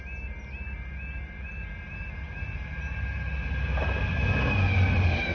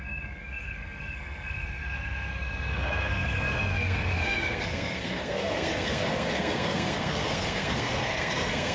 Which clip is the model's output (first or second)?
second